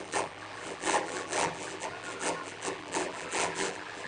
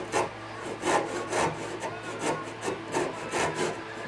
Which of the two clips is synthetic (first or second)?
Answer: first